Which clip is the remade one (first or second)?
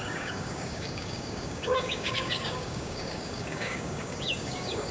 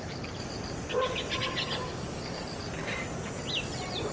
first